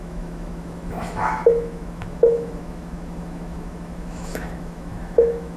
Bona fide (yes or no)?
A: no